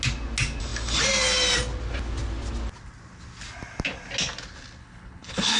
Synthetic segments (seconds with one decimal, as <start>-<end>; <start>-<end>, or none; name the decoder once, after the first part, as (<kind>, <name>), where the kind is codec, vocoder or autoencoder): 4.8-5.6 (codec, HILCodec)